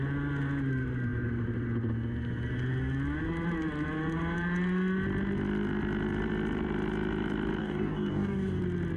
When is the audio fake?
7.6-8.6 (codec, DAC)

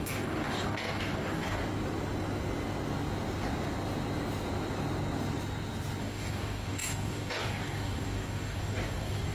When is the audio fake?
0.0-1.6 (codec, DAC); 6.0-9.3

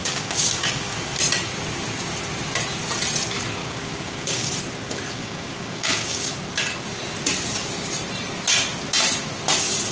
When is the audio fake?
0.0-1.2 (codec, DAC); 3.6-4.5; 5.2-6.3

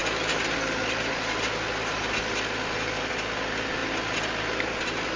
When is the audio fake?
none

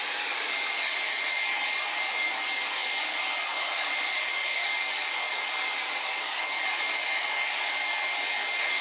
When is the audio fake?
0.0-8.8 (codec, DAC)

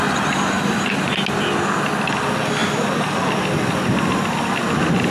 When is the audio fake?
none